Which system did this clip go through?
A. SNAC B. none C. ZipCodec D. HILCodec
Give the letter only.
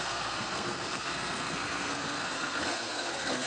A